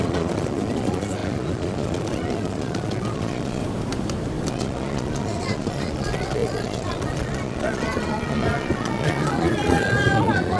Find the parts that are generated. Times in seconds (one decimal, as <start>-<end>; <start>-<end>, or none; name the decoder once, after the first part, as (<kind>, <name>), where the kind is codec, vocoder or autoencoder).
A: 0.0-3.6 (vocoder, Vocos); 4.5-10.6